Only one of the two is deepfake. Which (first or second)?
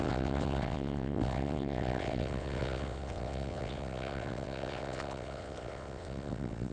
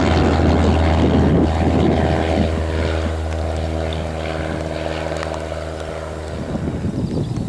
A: first